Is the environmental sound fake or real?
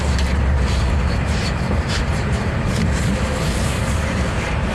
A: fake